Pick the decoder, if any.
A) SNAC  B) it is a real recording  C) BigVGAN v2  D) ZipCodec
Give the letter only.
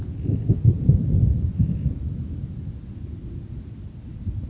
B